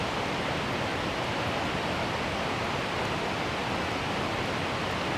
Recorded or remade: recorded